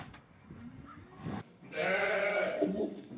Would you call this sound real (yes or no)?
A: no